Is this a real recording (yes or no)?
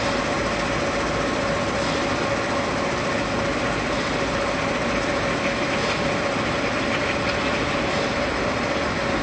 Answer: yes